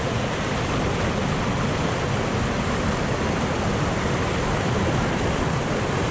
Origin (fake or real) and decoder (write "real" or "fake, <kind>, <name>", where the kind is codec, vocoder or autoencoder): real